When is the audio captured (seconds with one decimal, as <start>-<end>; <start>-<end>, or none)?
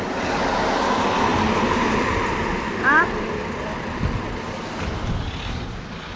0.0-6.2